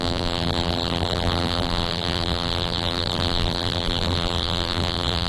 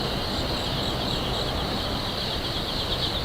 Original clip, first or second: second